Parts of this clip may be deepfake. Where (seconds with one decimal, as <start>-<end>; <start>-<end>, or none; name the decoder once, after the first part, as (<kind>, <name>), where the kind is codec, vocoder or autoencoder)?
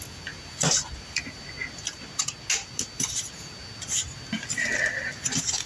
none